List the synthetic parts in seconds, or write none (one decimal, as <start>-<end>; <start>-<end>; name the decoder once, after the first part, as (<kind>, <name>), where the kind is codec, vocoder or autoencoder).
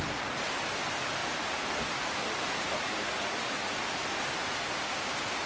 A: none